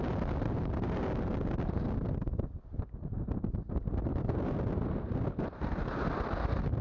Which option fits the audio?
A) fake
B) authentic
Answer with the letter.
B